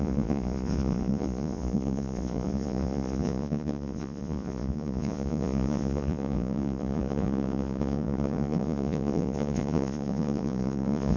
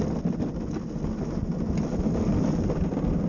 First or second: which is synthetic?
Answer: first